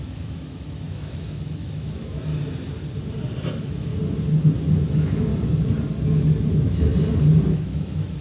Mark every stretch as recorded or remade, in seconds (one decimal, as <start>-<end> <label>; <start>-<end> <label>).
0.0-2.3 remade; 2.3-3.5 recorded; 3.5-3.9 remade; 3.9-4.8 recorded; 4.8-5.3 remade; 5.3-6.5 recorded; 6.5-6.9 remade; 6.9-7.5 recorded; 7.5-8.2 remade